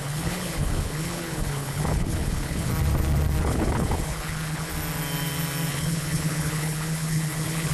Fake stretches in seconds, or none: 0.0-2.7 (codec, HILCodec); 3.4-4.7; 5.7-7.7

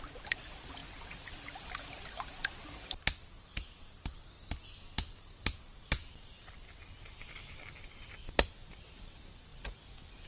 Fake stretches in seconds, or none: none

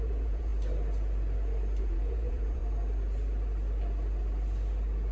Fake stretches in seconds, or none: 0.0-0.5 (vocoder, Vocos); 1.8-2.6